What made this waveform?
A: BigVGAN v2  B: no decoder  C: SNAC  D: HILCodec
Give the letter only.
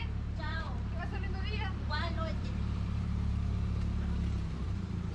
A